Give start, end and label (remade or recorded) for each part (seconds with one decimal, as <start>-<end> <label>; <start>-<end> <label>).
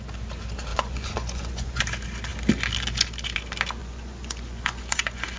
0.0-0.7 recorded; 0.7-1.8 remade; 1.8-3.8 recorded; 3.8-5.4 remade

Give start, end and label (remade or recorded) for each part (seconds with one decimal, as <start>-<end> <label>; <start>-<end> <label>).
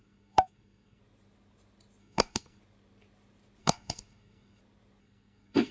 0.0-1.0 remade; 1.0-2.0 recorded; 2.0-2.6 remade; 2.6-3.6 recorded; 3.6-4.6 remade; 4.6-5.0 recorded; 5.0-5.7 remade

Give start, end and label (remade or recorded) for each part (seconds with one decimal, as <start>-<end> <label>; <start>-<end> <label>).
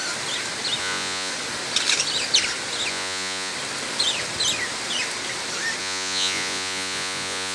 0.0-0.8 recorded; 0.8-1.3 remade; 1.3-2.9 recorded; 2.9-3.5 remade; 3.5-5.8 recorded; 5.8-7.5 remade